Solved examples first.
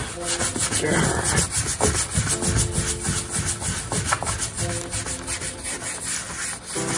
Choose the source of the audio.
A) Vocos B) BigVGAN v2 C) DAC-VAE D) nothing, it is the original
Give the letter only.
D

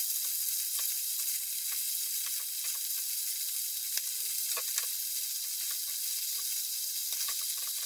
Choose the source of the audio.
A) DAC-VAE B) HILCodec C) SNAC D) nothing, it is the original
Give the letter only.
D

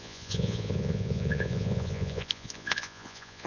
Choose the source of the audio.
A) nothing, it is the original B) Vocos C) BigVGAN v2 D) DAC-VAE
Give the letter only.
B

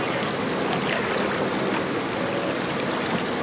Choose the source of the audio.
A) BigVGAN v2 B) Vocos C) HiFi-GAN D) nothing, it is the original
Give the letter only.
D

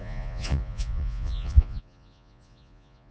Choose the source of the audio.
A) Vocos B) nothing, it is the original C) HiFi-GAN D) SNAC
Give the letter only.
A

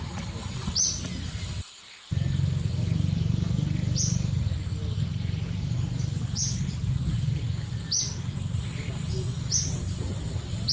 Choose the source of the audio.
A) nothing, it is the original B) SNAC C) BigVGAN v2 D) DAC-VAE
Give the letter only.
A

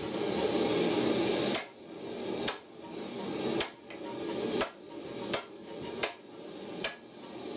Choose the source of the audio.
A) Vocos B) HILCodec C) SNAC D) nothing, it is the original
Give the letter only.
D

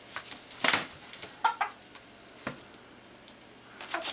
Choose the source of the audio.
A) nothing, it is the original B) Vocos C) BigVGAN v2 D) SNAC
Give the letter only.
A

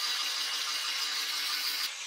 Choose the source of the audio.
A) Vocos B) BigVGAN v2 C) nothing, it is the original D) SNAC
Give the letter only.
C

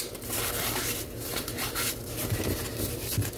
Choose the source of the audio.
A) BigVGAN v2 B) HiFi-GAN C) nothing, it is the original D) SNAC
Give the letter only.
C